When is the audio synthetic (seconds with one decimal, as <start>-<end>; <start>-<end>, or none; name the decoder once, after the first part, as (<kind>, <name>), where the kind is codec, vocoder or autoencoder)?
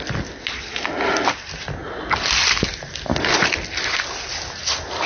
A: none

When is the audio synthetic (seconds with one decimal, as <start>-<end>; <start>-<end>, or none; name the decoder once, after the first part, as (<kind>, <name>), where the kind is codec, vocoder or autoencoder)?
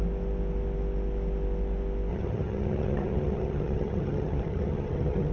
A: 2.1-5.3 (vocoder, HiFi-GAN)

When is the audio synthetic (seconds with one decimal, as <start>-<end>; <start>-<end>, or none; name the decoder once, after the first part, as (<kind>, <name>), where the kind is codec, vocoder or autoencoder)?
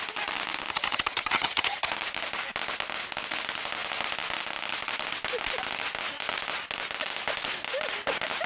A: 0.7-1.9 (vocoder, HiFi-GAN)